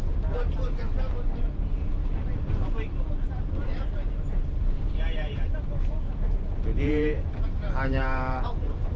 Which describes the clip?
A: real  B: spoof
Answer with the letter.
B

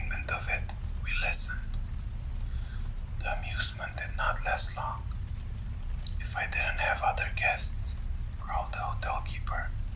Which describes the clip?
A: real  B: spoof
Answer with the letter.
A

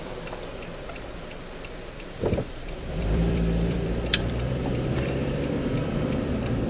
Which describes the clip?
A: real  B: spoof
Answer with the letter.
B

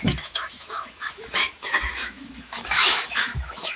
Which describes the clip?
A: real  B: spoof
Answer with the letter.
B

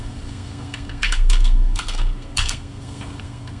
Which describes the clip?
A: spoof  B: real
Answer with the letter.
A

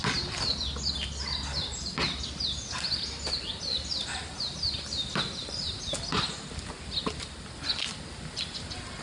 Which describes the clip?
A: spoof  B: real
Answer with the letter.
B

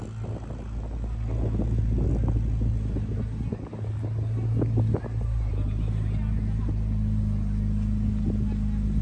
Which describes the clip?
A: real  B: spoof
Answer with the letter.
A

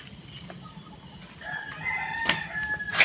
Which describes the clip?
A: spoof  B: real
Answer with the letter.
B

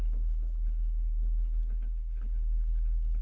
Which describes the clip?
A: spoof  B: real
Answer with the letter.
A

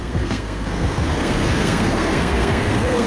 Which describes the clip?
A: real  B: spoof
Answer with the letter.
B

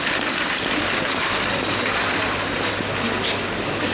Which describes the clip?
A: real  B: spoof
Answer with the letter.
A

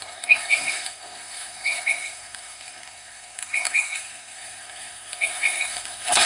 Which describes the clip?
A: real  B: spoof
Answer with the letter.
B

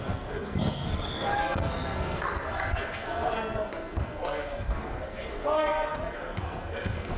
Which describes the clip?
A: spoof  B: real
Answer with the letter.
A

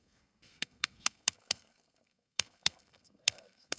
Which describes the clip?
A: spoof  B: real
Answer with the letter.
A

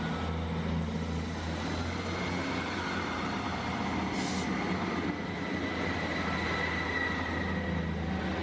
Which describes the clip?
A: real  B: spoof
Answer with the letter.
A